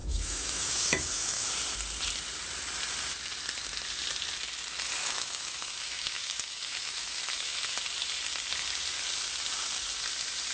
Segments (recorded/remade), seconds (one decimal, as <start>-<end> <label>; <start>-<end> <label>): 0.0-1.5 remade; 1.5-5.0 recorded; 5.0-7.8 remade; 7.8-10.5 recorded